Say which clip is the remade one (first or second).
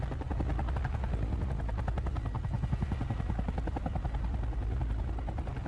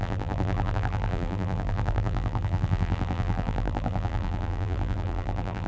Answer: second